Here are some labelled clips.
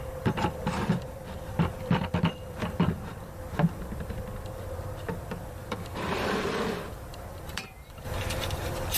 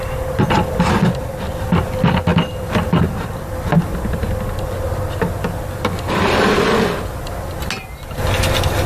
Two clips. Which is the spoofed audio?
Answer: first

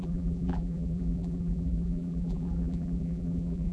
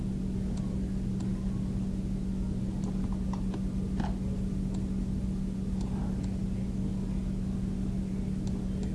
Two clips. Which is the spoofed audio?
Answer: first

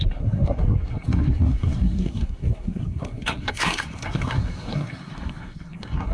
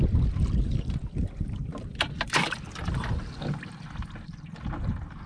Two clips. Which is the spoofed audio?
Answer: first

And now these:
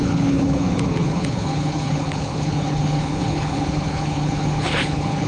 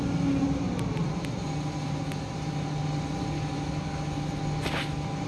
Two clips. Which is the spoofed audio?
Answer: first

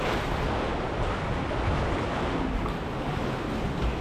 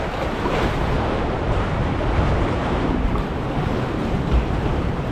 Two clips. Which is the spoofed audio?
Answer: second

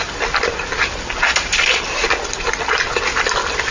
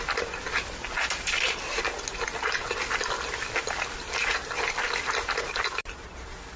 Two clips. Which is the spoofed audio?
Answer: first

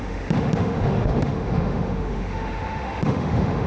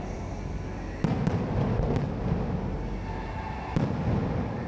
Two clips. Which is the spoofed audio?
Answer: first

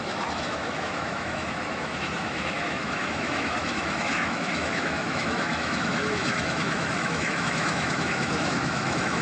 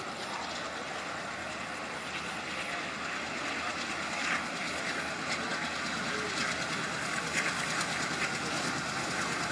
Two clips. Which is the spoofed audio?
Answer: first